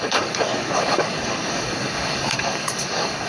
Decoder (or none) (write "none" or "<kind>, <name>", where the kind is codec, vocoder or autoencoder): codec, DAC